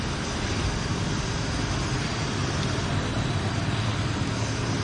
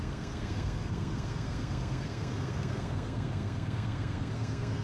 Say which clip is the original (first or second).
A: first